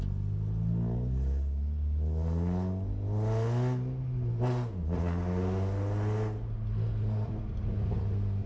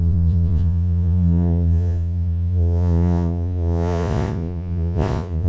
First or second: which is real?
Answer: first